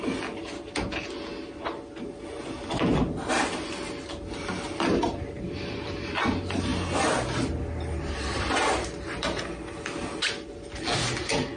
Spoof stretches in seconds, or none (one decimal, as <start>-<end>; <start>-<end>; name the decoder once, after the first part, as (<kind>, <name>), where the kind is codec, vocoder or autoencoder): none